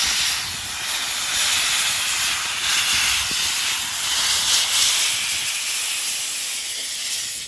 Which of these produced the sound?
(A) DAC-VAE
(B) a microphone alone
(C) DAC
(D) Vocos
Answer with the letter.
B